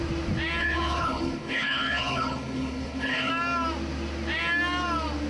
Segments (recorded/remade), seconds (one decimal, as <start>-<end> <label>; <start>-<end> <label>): 0.0-0.6 recorded; 0.6-3.3 remade; 3.3-5.3 recorded

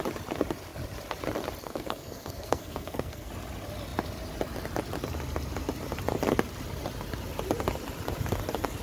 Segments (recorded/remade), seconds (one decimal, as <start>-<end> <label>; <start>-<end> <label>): 0.0-1.6 recorded; 1.6-3.3 remade; 3.3-8.8 recorded

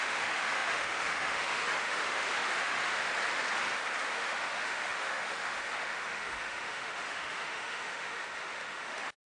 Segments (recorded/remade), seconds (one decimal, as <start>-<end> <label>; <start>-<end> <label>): 0.0-3.1 remade; 3.1-4.0 recorded; 4.0-9.4 remade